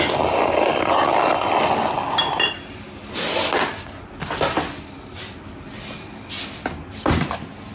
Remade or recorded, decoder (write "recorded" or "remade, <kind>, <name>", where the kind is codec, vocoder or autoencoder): recorded